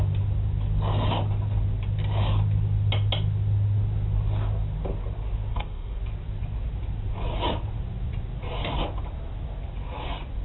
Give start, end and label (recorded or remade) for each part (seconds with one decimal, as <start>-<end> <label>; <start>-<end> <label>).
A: 0.0-5.5 recorded; 5.5-6.0 remade; 6.0-10.4 recorded